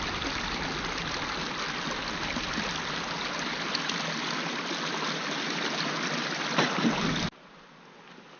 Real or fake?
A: real